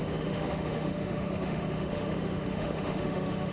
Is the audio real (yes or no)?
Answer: no